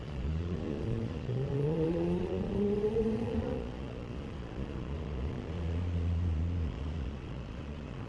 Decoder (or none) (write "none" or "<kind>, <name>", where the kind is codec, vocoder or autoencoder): vocoder, Vocos